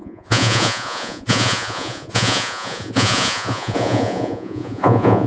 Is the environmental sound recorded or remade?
remade